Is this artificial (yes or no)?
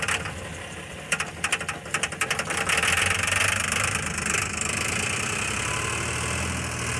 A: no